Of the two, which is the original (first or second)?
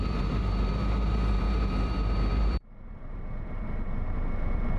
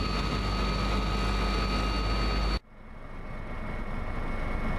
second